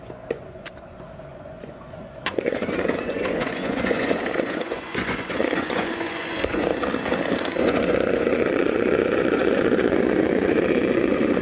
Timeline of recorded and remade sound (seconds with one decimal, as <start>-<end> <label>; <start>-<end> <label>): 0.0-6.7 remade; 6.7-7.6 recorded; 7.6-11.4 remade